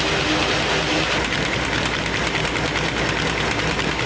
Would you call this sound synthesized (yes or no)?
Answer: no